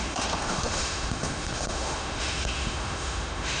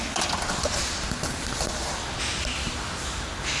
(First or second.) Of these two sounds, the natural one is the second